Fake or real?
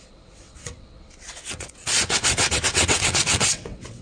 fake